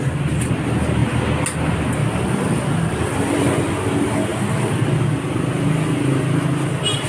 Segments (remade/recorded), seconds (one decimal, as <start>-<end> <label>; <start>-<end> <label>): 0.0-2.0 recorded; 2.0-3.7 remade; 3.7-7.1 recorded